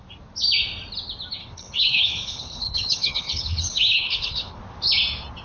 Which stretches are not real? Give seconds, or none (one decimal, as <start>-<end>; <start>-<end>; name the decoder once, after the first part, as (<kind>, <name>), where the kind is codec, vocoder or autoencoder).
1.4-4.6 (codec, HILCodec)